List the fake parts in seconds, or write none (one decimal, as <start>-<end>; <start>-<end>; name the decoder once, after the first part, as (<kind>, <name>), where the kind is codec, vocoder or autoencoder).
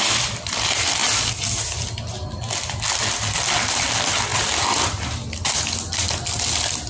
none